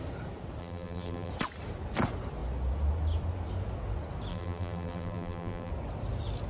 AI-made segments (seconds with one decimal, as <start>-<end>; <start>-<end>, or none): 0.6-1.3; 4.3-5.7